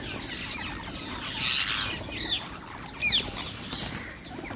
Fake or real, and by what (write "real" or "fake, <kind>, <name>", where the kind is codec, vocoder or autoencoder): real